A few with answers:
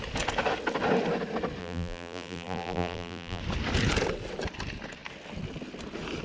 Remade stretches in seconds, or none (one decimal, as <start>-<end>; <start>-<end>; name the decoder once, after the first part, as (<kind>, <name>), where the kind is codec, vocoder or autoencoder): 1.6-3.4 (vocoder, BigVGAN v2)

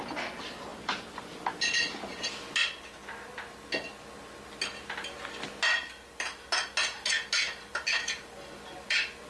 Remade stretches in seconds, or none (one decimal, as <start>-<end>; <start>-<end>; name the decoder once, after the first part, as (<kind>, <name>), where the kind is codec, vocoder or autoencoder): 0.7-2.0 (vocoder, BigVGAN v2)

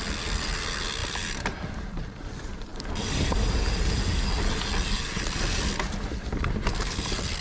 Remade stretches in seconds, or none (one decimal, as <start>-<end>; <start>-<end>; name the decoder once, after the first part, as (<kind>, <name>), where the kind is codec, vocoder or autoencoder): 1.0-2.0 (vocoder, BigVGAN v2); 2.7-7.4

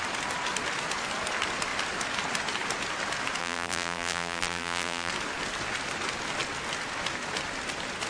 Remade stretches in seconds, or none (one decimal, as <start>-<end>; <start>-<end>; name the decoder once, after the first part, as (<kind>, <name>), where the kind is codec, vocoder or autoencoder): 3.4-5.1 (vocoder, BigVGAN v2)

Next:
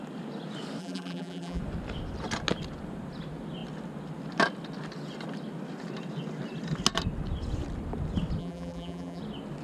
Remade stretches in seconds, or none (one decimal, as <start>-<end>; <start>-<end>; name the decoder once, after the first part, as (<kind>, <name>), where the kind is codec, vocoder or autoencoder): 0.8-1.6 (vocoder, BigVGAN v2); 8.4-9.2

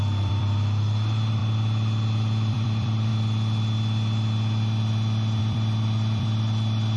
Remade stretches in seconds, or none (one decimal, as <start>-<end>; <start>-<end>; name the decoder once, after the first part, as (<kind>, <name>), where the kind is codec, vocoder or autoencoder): 0.0-1.4 (vocoder, BigVGAN v2); 2.5-3.1; 5.4-7.0

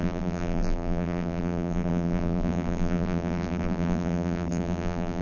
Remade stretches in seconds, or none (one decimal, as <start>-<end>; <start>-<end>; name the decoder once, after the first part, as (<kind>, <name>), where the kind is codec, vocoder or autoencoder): 0.0-5.2 (vocoder, BigVGAN v2)

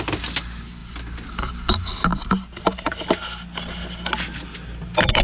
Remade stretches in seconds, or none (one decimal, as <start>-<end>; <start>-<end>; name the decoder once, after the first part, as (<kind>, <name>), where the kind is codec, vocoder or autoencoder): none